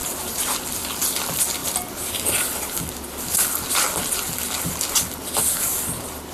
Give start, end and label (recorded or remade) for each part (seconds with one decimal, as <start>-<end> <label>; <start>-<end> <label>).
0.0-6.3 recorded